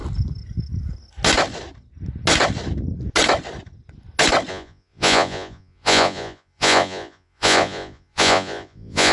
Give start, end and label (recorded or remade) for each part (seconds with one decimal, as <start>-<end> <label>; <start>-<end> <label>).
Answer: 0.0-4.5 recorded; 4.5-9.1 remade